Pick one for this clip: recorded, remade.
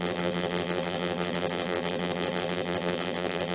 remade